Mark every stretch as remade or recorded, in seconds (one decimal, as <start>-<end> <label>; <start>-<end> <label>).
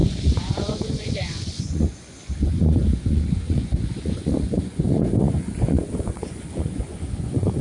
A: 0.0-7.6 remade